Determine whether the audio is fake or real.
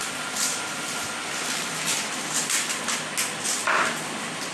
real